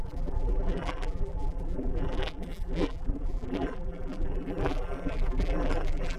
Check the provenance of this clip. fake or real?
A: fake